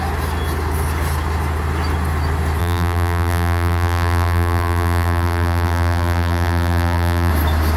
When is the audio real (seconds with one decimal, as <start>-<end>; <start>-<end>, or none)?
0.0-2.6; 7.3-7.8